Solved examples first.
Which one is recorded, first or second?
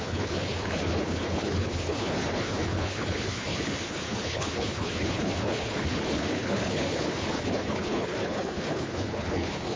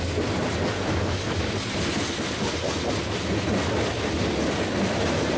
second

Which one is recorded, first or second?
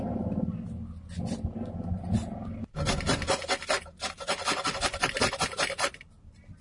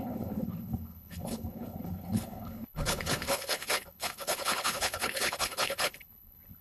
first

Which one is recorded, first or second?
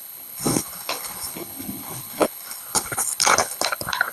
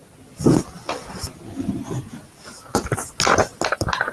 second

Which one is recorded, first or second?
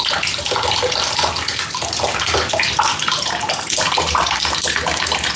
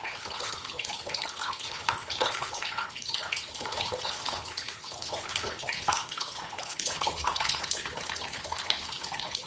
first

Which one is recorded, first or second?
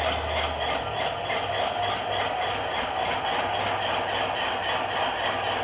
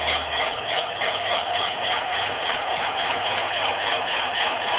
first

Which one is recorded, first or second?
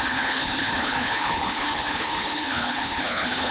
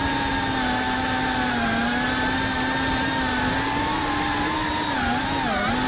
second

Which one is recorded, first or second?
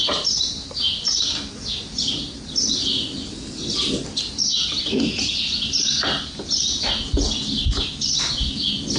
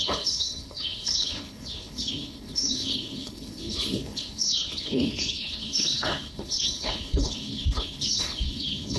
first